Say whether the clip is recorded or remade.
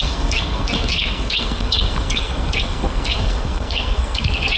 remade